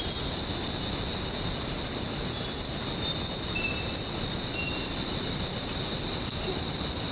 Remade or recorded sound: recorded